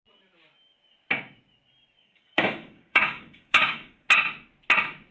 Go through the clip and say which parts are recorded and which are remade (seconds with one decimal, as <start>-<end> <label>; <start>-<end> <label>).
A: 0.0-2.0 recorded; 2.0-4.1 remade; 4.1-5.1 recorded